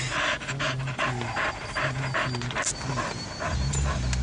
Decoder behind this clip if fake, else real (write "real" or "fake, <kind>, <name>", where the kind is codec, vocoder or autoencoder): real